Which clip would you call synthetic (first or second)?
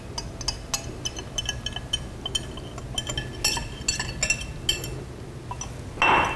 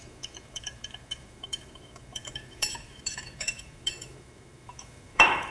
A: second